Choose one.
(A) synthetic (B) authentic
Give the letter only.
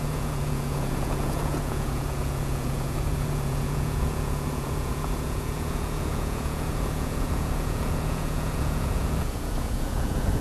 A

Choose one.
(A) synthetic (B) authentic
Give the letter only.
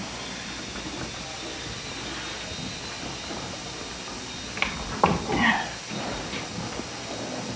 B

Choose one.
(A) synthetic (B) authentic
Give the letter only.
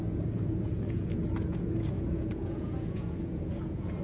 A